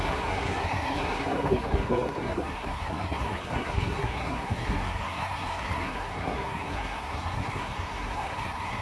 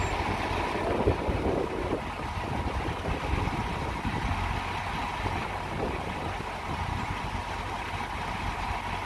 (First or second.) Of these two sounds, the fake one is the first